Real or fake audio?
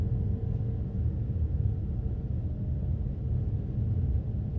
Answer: real